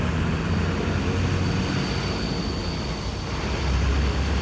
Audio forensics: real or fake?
real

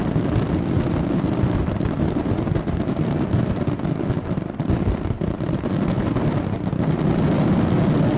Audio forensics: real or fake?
real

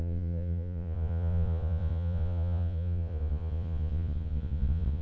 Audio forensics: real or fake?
fake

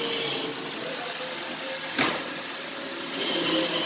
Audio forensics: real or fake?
real